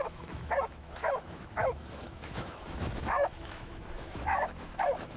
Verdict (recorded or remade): remade